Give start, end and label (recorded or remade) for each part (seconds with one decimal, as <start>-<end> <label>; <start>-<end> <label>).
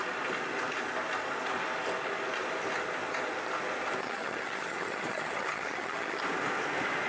0.0-4.0 recorded; 4.0-6.2 remade; 6.2-7.1 recorded